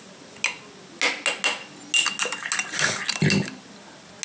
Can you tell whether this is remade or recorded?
recorded